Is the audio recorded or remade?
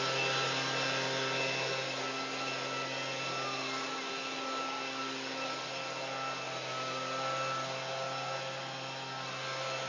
recorded